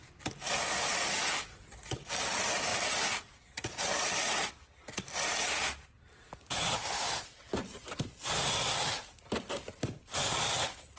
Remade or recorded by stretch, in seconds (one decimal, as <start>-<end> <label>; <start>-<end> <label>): 0.0-11.0 recorded